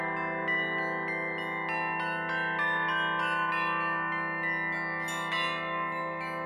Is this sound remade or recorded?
recorded